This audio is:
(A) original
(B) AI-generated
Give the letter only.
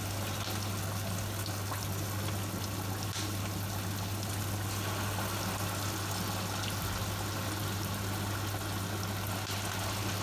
A